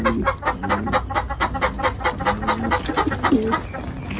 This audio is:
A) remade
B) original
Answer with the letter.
B